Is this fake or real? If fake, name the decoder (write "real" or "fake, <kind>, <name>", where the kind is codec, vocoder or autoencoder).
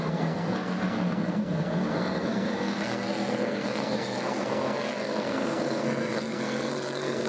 fake, codec, SNAC